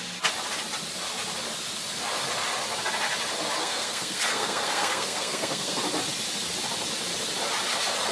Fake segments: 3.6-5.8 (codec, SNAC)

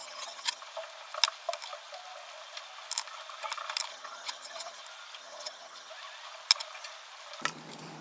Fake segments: 0.0-0.6 (vocoder, HiFi-GAN); 3.9-4.8; 5.2-5.9

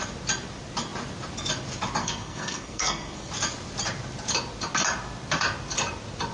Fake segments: 2.0-3.3 (codec, SNAC)

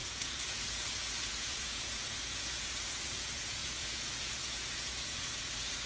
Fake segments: 0.0-5.9 (vocoder, Vocos)